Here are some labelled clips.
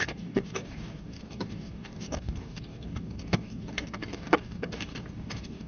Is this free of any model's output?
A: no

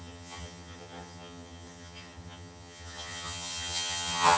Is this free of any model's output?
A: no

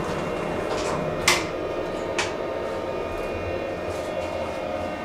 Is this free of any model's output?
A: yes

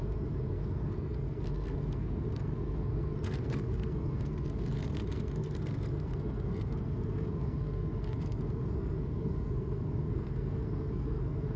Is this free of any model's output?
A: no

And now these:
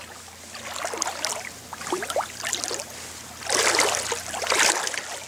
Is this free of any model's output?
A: yes